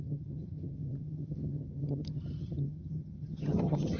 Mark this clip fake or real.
fake